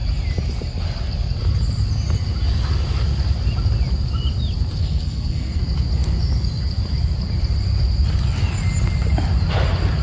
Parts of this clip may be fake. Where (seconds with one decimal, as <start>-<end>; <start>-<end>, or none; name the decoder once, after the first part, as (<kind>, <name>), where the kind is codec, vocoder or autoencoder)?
4.8-5.6 (codec, SNAC)